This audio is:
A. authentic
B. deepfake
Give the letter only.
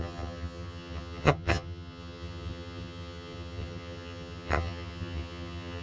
B